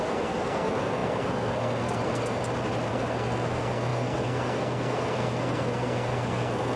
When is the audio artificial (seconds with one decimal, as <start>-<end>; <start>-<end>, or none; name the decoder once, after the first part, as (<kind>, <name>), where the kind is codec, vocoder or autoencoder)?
0.0-2.4 (codec, SNAC); 2.9-6.8